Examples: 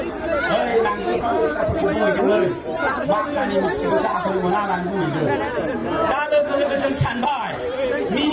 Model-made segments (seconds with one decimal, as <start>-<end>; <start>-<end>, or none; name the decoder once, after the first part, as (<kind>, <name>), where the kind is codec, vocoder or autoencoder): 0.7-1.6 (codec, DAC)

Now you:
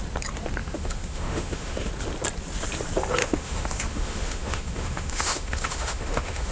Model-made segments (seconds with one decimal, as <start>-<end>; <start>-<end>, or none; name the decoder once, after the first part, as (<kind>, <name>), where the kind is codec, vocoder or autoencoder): 0.6-1.9 (autoencoder, DAC-VAE); 3.2-6.5

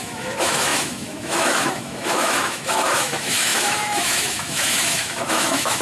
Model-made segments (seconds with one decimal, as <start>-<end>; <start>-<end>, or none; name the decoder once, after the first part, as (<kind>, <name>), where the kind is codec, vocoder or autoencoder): 0.0-5.8 (autoencoder, DAC-VAE)